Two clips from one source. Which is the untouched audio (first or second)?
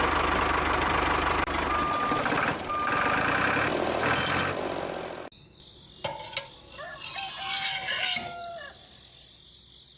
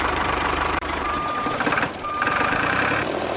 first